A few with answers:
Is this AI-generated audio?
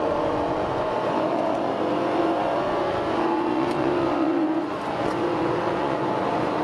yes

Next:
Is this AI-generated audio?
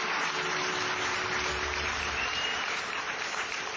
no